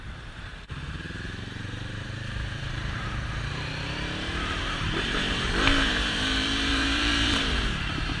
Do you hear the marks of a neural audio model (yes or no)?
yes